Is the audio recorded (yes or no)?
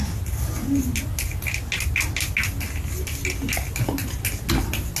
yes